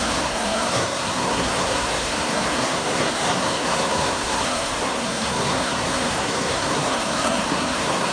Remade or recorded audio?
remade